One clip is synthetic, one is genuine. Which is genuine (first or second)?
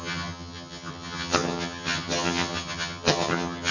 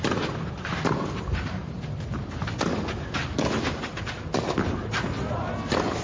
second